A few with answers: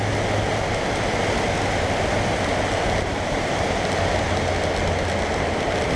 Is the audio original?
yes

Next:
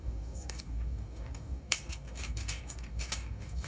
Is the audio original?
no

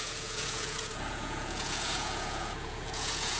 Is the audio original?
no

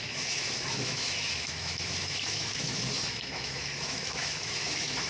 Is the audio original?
no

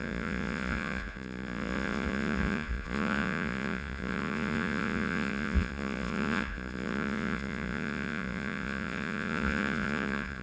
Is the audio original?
no